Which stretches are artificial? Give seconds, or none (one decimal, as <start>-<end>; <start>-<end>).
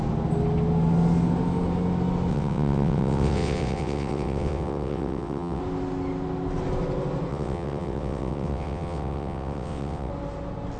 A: 2.3-5.6; 7.3-10.1